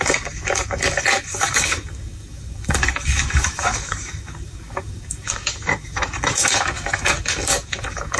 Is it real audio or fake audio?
fake